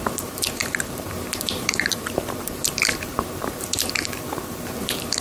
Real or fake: fake